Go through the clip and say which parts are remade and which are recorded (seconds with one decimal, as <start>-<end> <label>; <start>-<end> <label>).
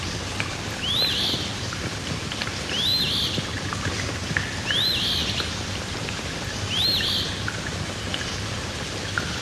0.0-9.4 recorded